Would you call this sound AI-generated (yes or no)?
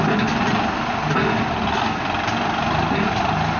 no